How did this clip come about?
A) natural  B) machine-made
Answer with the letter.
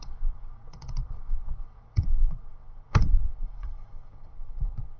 B